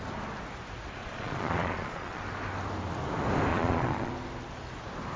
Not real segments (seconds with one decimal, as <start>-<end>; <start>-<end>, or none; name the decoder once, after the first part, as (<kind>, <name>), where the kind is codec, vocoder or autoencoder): 1.0-2.2 (vocoder, Vocos); 3.5-4.1